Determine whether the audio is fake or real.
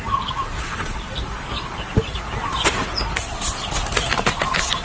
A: real